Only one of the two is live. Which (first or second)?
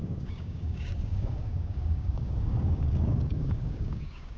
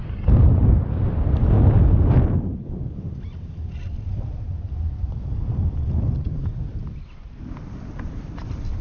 second